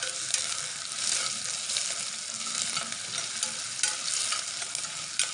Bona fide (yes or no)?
yes